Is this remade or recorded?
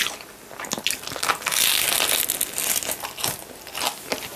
recorded